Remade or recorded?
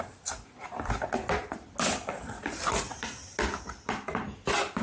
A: recorded